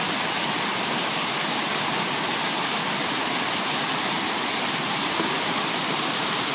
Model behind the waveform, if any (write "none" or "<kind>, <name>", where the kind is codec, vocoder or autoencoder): none